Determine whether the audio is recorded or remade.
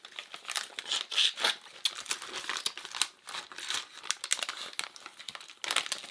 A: recorded